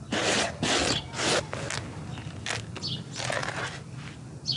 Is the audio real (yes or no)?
yes